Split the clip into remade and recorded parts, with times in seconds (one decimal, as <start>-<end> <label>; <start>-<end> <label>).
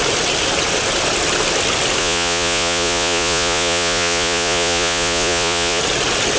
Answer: 0.0-2.0 recorded; 2.0-5.8 remade; 5.8-6.4 recorded